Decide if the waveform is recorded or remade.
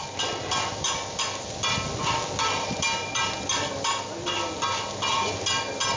recorded